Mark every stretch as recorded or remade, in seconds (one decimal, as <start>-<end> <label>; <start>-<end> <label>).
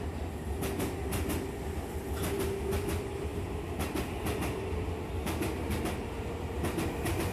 0.0-7.3 recorded